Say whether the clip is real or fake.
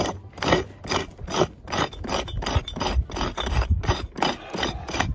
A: real